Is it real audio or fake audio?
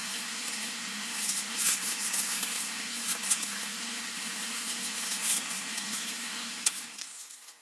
fake